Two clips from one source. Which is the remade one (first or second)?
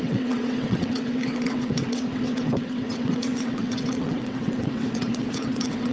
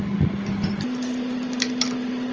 first